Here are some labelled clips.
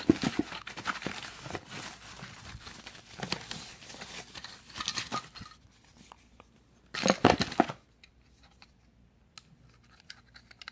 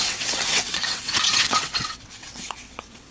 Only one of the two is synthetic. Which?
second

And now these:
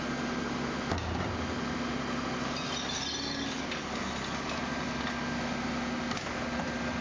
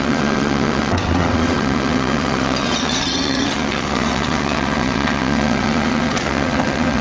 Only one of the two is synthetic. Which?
second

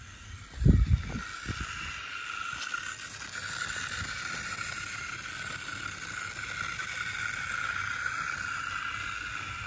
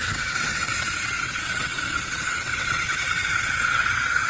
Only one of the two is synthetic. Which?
second